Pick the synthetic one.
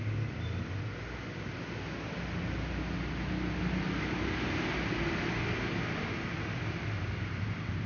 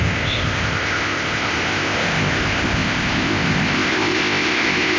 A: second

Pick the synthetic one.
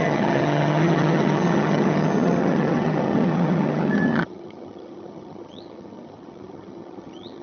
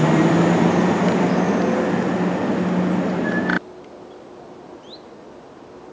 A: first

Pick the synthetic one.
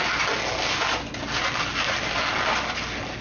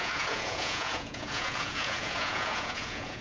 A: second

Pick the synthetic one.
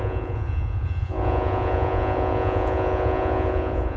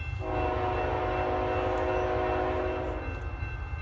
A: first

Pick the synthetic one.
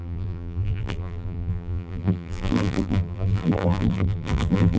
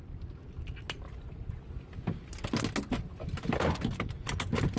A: first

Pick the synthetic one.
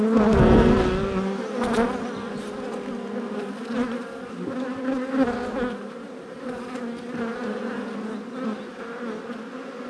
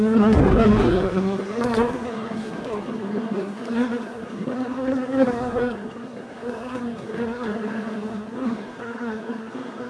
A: second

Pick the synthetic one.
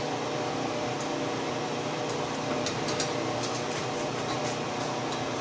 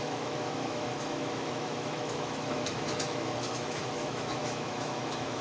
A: second